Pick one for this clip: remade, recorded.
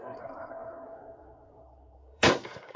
remade